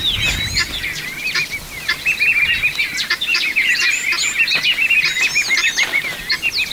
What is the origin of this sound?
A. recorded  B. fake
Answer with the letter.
A